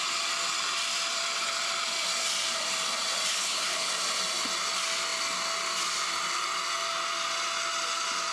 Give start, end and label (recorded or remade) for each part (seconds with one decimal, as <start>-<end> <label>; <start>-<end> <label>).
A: 0.0-3.3 recorded; 3.3-3.9 remade; 3.9-8.3 recorded